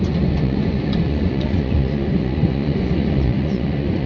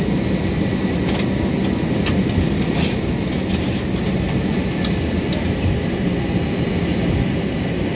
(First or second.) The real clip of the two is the second